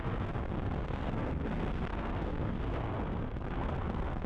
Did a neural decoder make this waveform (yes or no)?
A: yes